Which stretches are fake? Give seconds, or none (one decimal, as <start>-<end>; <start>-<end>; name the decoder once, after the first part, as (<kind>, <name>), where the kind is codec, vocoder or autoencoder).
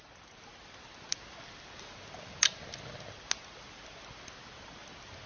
none